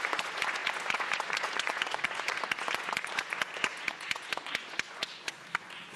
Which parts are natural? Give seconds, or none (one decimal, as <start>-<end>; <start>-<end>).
none